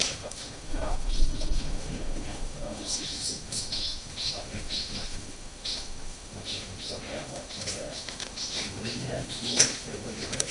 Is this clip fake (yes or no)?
yes